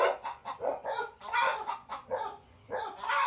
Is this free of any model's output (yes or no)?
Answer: no